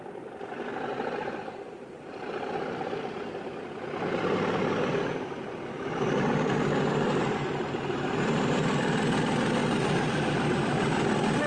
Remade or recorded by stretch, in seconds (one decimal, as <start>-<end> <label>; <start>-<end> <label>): 0.0-0.9 recorded; 0.9-3.1 remade; 3.1-5.1 recorded; 5.1-8.8 remade; 8.8-11.5 recorded